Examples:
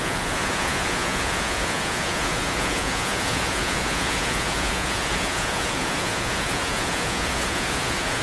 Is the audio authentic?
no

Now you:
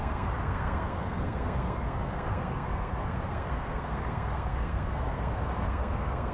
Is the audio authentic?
no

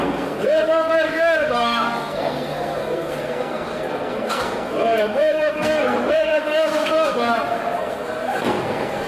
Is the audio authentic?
no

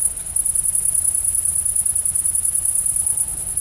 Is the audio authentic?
yes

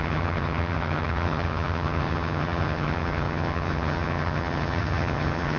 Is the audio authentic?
no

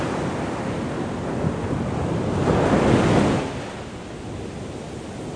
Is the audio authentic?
yes